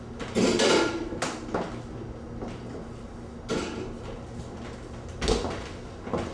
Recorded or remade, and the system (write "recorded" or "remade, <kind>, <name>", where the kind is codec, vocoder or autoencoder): recorded